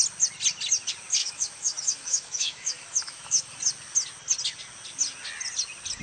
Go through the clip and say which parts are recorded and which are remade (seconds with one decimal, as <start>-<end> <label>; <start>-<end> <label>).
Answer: 0.0-1.2 recorded; 1.2-3.5 remade; 3.5-6.0 recorded